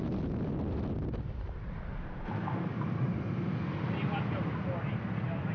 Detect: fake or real real